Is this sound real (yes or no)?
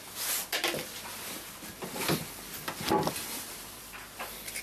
yes